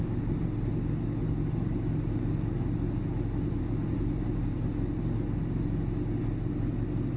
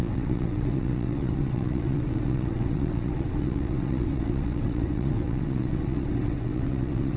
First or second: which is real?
first